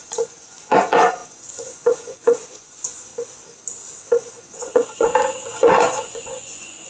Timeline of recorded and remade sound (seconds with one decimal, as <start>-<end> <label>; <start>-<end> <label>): 0.0-3.1 remade; 3.1-4.4 recorded; 4.4-6.9 remade